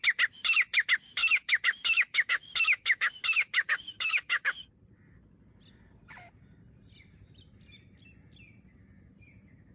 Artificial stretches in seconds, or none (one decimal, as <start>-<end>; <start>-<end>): 1.2-4.7